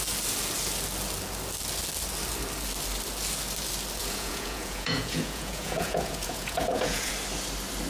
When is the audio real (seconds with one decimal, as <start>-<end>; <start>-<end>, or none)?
0.0-4.0; 7.1-7.9